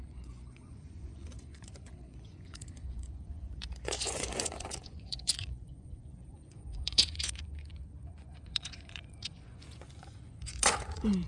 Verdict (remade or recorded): remade